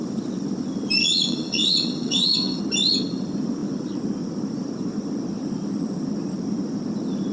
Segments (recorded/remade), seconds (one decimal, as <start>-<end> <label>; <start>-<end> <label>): 0.0-1.0 recorded; 1.0-2.6 remade; 2.6-7.3 recorded